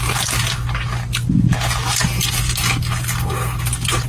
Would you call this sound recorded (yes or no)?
yes